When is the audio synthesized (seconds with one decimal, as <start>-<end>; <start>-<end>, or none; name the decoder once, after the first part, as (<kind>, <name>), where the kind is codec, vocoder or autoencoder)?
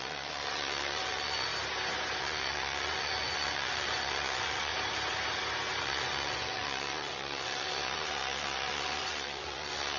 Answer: 0.0-1.5 (vocoder, Vocos); 2.2-4.7; 5.8-10.0